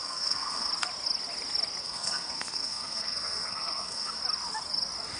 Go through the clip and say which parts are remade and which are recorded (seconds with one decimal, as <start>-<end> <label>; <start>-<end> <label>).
0.0-0.7 remade; 0.7-1.8 recorded; 1.8-4.2 remade; 4.2-5.2 recorded